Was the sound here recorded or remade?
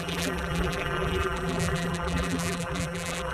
remade